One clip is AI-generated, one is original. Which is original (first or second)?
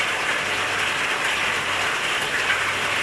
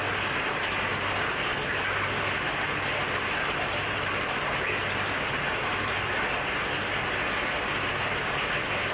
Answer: second